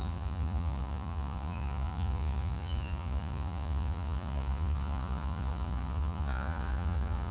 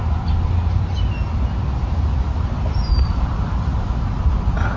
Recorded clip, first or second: second